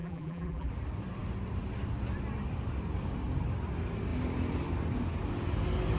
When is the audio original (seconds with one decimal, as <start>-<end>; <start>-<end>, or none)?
0.7-6.0